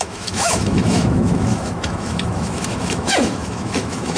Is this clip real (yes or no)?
no